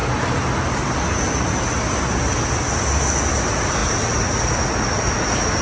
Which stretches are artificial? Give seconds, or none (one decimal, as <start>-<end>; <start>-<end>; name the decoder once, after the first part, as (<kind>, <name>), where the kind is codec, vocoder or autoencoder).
none